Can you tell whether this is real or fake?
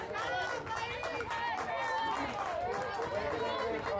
real